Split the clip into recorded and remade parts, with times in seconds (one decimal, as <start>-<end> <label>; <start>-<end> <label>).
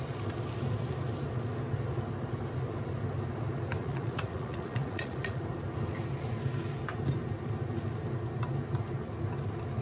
0.0-3.8 recorded; 3.8-5.4 remade; 5.4-9.8 recorded